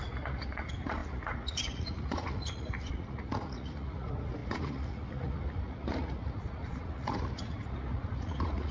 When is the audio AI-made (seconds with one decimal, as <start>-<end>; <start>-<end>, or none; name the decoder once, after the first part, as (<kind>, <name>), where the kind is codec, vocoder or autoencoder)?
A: 0.0-8.7 (vocoder, Vocos)